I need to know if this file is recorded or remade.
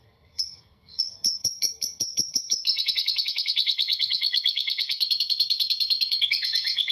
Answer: remade